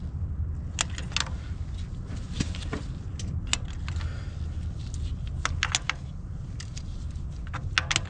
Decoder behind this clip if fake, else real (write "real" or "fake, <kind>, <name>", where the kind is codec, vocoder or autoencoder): real